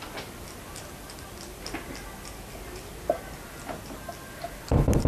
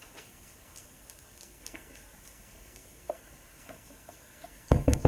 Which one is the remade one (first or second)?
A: second